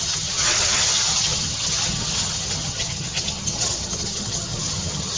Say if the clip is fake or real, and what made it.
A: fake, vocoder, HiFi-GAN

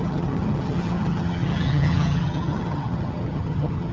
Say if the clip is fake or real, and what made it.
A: fake, vocoder, HiFi-GAN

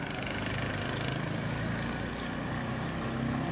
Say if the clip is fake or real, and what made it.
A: real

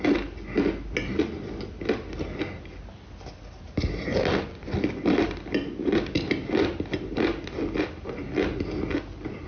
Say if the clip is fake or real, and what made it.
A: real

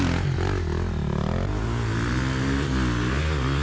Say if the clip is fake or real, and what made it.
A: real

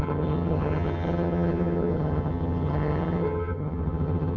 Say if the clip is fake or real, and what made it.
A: fake, vocoder, HiFi-GAN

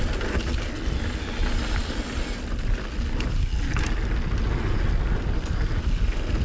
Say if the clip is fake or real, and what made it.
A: real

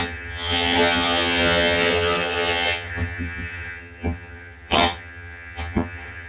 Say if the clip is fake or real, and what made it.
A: fake, vocoder, HiFi-GAN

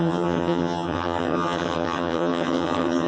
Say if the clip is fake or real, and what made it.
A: fake, vocoder, HiFi-GAN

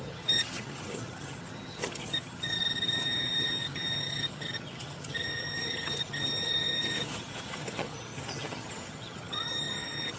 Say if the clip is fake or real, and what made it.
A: fake, vocoder, HiFi-GAN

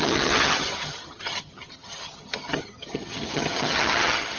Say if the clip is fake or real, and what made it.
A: fake, vocoder, HiFi-GAN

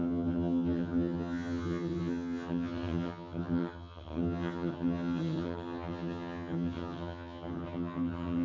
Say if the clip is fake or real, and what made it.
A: fake, vocoder, HiFi-GAN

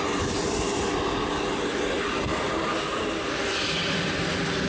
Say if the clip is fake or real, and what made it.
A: real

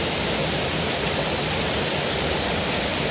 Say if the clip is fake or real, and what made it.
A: real